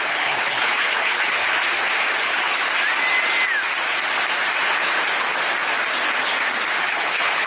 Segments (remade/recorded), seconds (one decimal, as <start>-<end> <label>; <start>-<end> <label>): 0.0-1.4 remade; 1.4-2.2 recorded; 2.2-2.6 remade; 2.6-6.8 recorded; 6.8-7.5 remade